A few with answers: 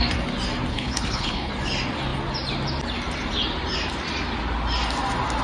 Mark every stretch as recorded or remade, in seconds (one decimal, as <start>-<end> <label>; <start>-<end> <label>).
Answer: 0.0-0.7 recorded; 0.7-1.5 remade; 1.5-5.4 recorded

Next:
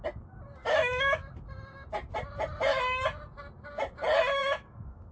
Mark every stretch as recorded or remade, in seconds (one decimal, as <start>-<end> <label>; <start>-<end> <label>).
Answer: 0.0-0.6 recorded; 0.6-1.2 remade; 1.2-4.4 recorded; 4.4-5.1 remade

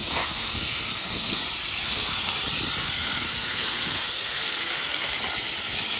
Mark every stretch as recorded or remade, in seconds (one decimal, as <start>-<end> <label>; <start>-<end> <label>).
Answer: 0.0-1.4 remade; 1.4-1.8 recorded; 1.8-2.3 remade; 2.3-2.8 recorded; 2.8-5.2 remade; 5.2-6.0 recorded

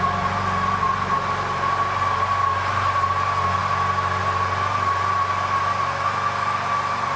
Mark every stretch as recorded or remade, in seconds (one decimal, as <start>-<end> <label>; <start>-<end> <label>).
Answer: 0.0-7.2 recorded

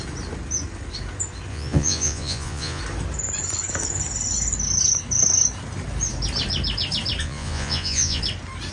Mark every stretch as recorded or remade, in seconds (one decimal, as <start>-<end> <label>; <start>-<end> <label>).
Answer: 0.0-1.5 recorded; 1.5-2.8 remade; 2.8-7.2 recorded; 7.2-8.2 remade; 8.2-8.7 recorded